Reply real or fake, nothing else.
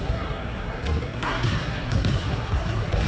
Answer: fake